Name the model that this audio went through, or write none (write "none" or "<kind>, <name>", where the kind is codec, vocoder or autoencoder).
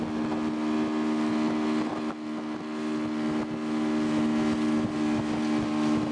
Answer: none